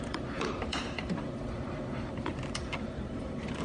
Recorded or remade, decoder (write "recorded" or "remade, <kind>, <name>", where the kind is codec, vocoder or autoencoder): remade, vocoder, BigVGAN v2